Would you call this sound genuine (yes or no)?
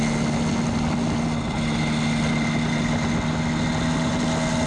yes